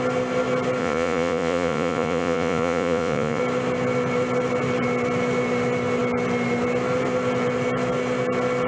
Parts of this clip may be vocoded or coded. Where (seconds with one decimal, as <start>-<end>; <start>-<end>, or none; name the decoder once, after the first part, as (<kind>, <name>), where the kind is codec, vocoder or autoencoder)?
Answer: 0.8-3.4 (vocoder, Vocos)